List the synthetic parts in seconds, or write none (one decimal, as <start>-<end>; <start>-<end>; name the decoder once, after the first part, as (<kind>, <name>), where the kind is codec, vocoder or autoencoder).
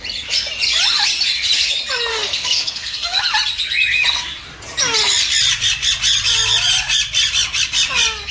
2.1-3.2 (codec, SNAC)